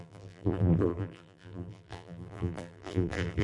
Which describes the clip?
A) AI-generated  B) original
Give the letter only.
A